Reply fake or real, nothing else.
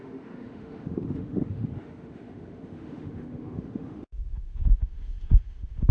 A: fake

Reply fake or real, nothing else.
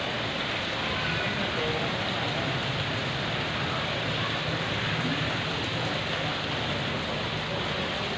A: real